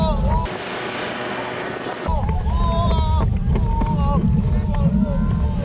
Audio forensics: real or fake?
real